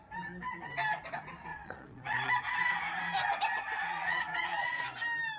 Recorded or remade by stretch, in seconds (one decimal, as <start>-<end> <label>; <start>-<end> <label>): 0.0-1.5 recorded; 1.5-2.3 remade; 2.3-3.8 recorded; 3.8-4.8 remade; 4.8-5.4 recorded